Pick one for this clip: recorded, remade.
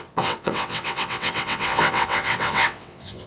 remade